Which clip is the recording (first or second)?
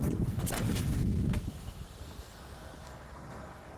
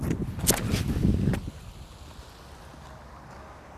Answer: second